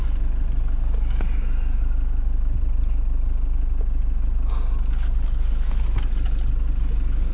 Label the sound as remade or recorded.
recorded